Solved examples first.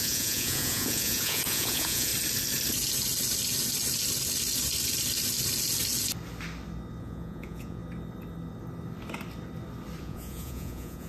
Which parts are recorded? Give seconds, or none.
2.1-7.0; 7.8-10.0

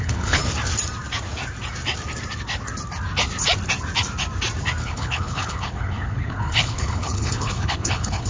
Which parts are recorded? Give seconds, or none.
0.4-4.8